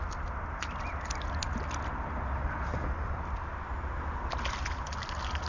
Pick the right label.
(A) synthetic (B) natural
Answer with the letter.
B